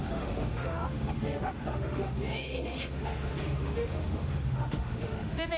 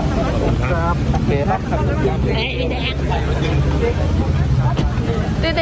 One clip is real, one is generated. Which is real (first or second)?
second